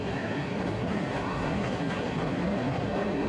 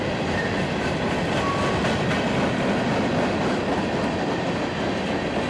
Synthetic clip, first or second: first